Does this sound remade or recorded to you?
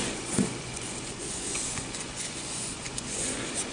remade